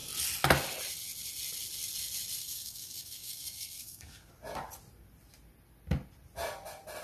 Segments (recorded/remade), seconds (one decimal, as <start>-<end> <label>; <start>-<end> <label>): 0.0-2.4 recorded; 2.4-4.3 remade; 4.3-7.0 recorded

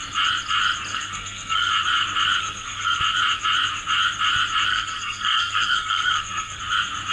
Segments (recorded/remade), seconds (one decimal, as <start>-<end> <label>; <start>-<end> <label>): 0.0-0.9 recorded; 0.9-1.7 remade; 1.7-2.4 recorded; 2.4-3.0 remade; 3.0-4.7 recorded; 4.7-6.6 remade; 6.6-7.1 recorded

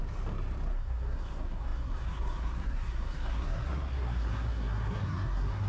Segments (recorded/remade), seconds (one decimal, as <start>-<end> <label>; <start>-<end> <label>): 0.0-0.7 recorded; 0.7-5.7 remade

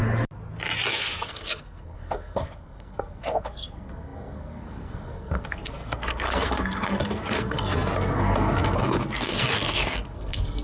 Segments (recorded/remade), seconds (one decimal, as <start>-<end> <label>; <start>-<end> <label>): 0.0-0.9 recorded; 0.9-10.6 remade

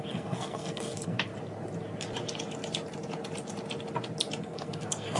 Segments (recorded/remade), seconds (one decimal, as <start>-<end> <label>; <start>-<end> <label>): 0.0-1.3 remade; 1.3-4.4 recorded; 4.4-5.2 remade